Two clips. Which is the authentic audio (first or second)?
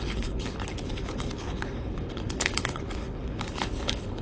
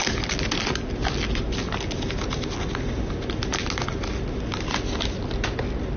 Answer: second